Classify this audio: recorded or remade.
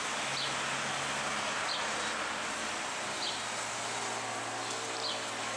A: recorded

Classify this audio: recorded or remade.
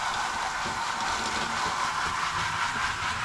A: recorded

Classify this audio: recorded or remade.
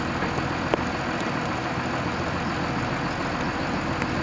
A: recorded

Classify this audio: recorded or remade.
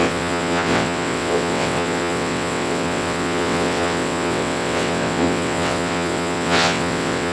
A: remade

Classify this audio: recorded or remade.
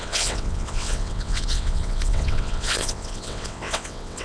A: remade